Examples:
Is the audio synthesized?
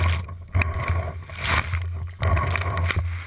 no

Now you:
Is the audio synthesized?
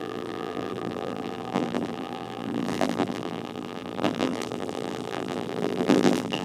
yes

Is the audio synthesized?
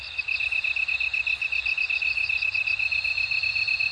no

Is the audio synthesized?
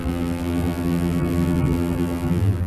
yes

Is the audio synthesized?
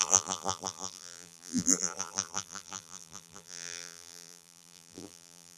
yes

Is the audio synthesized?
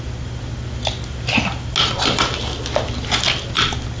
no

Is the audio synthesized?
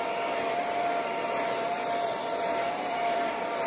yes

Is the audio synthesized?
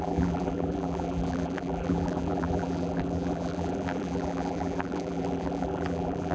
yes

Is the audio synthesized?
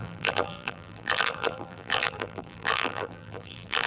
yes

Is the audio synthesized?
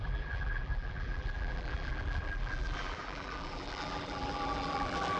yes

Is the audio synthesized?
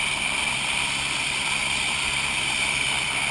yes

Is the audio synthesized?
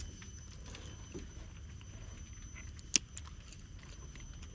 no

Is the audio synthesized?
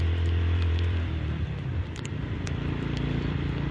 yes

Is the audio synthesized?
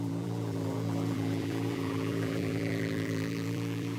yes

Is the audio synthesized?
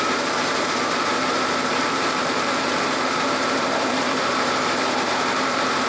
yes